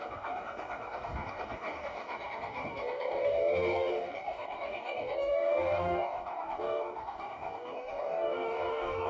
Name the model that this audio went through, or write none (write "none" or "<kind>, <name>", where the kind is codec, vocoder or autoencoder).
codec, DAC